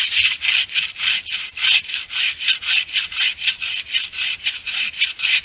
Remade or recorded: recorded